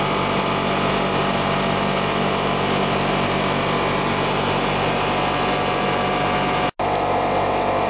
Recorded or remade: recorded